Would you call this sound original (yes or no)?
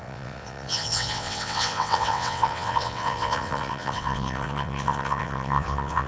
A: no